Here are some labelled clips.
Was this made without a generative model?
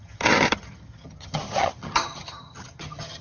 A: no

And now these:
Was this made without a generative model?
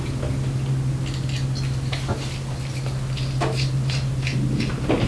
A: yes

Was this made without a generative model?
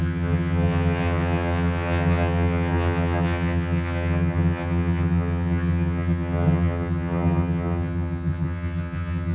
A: no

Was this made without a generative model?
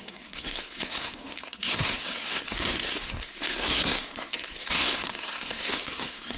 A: no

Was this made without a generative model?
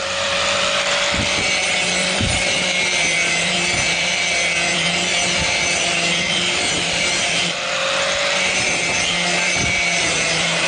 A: no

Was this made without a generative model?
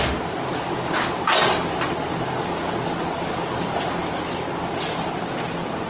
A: yes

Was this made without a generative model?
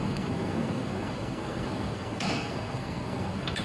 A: no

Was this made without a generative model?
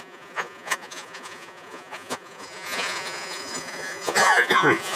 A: no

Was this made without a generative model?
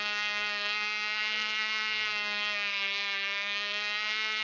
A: no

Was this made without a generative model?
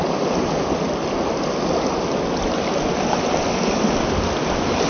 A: yes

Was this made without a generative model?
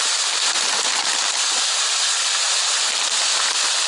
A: yes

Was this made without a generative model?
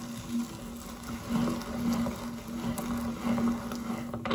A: yes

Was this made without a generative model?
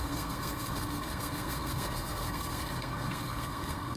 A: no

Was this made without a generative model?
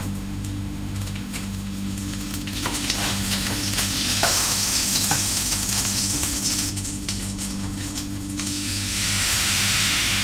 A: no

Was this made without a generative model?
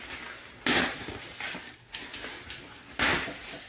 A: yes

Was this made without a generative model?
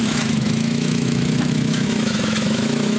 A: no